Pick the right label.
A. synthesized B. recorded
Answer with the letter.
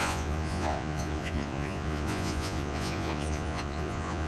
A